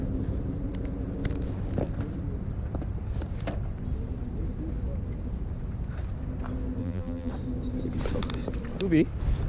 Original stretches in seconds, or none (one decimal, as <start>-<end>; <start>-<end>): 0.0-6.8; 7.3-9.5

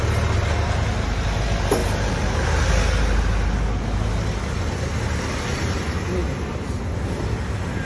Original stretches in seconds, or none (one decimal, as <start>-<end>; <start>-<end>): 0.0-7.8

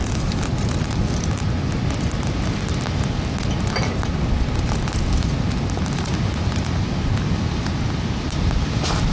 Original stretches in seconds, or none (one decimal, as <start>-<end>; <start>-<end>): 0.0-9.1

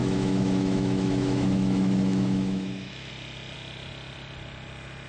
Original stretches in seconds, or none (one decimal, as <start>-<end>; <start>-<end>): 3.1-5.1

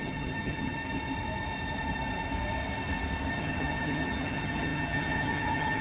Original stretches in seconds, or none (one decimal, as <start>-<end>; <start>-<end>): 0.8-3.3

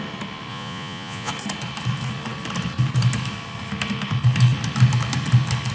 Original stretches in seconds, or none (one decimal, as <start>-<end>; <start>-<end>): 0.0-0.5; 1.3-5.7

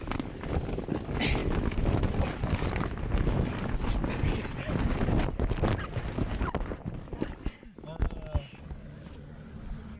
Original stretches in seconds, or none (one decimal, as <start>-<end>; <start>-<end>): 0.0-10.0